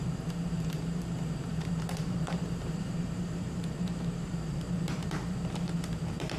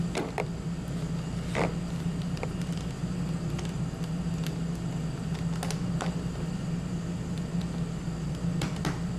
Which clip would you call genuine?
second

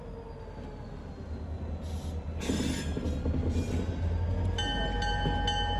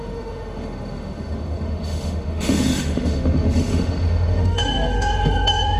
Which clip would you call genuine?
first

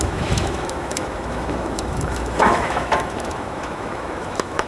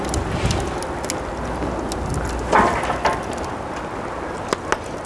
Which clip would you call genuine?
second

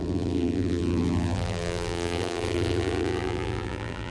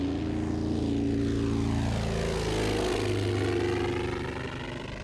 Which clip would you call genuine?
second